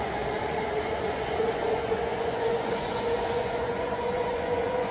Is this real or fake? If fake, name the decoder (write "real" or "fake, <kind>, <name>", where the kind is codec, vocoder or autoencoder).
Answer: fake, vocoder, Vocos